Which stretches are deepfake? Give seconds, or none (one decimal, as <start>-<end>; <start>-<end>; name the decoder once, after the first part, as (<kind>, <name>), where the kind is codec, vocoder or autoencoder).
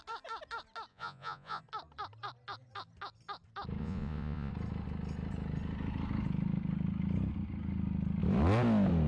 0.9-1.6 (vocoder, Vocos); 3.8-4.5